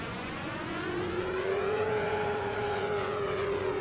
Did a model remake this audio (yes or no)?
yes